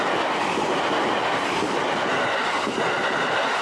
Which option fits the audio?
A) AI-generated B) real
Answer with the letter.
B